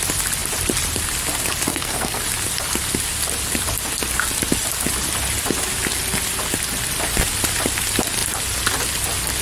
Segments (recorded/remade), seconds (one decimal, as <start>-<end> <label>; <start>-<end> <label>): 0.0-1.7 recorded; 1.7-2.2 remade; 2.2-9.4 recorded